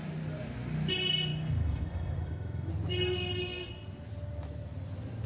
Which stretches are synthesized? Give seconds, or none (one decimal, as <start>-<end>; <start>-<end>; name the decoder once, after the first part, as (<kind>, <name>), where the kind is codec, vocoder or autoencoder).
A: 1.3-2.7 (autoencoder, DAC-VAE)